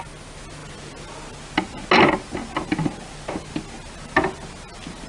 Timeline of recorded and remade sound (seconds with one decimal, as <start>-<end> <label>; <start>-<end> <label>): 0.0-5.1 recorded